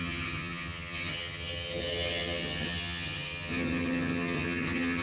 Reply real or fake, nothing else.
fake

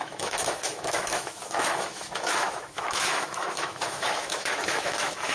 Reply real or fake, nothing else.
fake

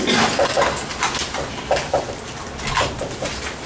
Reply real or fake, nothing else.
real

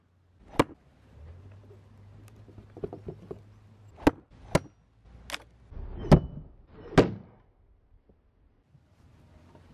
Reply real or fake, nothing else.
real